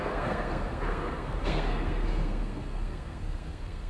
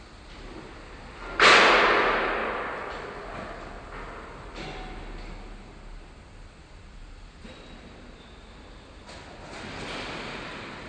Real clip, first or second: second